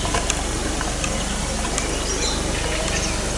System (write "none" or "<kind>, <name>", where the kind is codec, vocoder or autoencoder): none